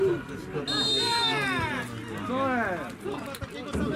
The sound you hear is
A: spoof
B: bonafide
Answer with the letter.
B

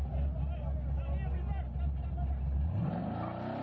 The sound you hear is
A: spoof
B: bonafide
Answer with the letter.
B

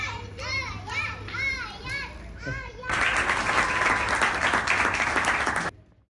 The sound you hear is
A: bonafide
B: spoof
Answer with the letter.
A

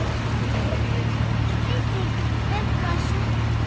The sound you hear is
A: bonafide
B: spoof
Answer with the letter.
A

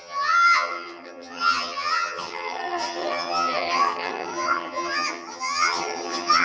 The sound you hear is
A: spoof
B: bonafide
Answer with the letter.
A